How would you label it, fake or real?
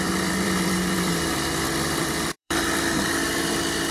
fake